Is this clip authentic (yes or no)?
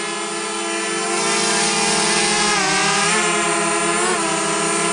yes